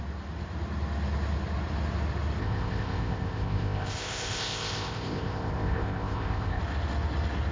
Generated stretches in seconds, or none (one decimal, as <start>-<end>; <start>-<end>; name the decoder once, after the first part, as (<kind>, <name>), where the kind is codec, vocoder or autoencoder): 2.4-6.6 (codec, ZipCodec)